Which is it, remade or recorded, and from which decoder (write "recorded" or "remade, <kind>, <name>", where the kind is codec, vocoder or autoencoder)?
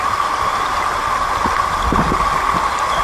recorded